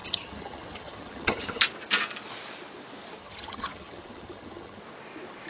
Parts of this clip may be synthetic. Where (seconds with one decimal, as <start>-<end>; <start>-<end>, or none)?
0.0-1.6; 3.2-4.8